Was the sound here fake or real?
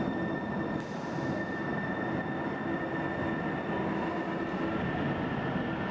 real